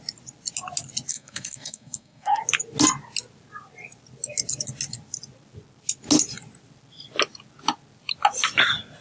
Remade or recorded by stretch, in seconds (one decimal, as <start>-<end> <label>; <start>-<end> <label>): 0.0-1.1 recorded; 1.1-2.4 remade; 2.4-9.0 recorded